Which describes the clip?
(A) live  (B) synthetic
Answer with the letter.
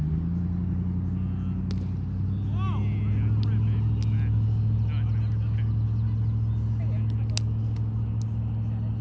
A